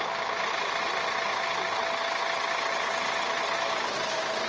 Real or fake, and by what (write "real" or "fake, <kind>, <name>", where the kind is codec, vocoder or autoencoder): real